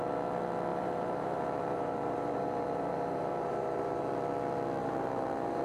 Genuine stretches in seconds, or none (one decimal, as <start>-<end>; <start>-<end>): 0.0-0.7; 4.1-4.8